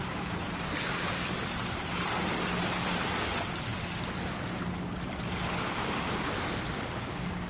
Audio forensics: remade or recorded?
recorded